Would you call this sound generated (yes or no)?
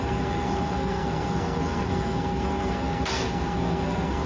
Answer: yes